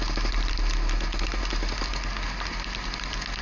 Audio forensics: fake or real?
real